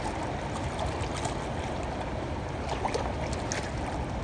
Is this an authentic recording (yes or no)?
yes